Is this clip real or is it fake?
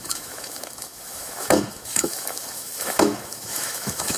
fake